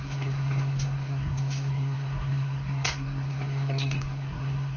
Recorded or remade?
remade